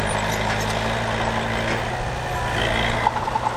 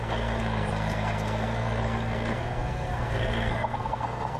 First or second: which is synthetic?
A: second